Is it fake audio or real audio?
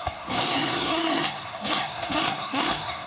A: fake